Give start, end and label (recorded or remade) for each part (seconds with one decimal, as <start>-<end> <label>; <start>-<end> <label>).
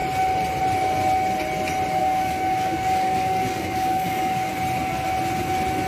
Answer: 0.0-2.0 recorded; 2.0-4.5 remade; 4.5-5.9 recorded